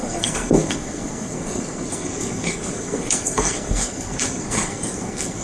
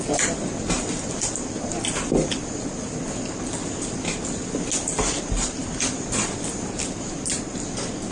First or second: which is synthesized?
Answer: first